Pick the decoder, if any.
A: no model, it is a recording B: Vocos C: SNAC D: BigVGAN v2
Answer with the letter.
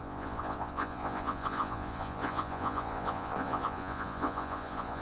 B